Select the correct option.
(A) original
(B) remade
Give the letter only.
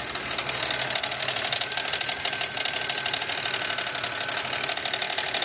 A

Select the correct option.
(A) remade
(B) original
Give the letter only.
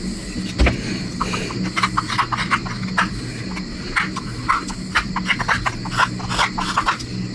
B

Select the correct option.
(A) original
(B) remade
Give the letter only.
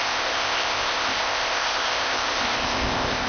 B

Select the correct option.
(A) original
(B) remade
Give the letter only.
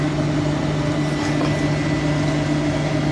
A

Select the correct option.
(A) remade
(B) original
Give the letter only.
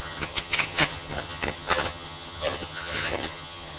A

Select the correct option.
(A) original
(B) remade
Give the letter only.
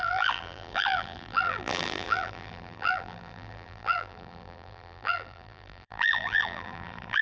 B